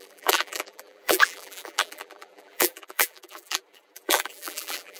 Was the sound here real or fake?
fake